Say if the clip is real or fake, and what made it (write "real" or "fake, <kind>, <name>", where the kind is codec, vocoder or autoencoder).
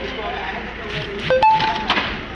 real